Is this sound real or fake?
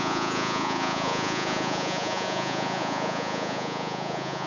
fake